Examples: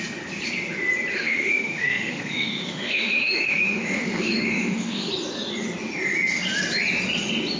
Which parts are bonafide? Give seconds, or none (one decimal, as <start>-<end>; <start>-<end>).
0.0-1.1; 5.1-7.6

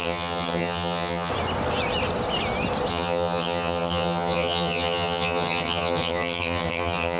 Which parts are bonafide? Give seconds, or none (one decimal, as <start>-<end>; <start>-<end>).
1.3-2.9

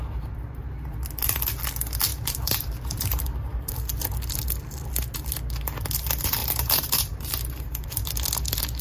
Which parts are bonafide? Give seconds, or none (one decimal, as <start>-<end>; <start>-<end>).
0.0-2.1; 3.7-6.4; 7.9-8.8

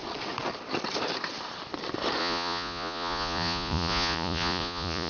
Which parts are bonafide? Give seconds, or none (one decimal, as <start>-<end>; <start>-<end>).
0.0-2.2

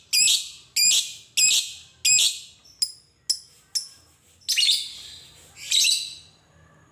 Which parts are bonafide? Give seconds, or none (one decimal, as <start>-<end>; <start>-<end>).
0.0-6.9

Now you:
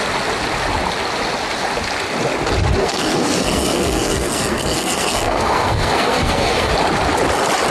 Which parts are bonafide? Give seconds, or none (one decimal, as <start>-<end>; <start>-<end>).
0.0-2.8; 6.7-7.7